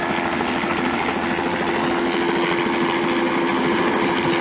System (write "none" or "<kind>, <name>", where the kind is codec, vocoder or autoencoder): none